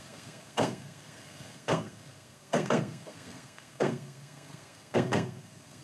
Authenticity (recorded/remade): remade